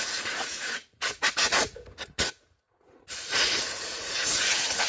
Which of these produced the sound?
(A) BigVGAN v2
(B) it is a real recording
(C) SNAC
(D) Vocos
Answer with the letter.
D